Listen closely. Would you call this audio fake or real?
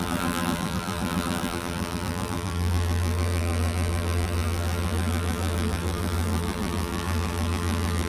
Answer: fake